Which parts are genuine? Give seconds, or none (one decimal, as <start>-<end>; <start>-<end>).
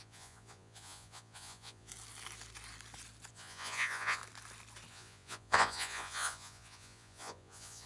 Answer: 1.9-3.3; 4.2-4.9